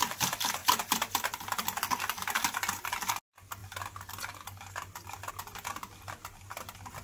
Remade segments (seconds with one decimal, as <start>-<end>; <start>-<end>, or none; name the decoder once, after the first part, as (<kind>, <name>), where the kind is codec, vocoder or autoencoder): none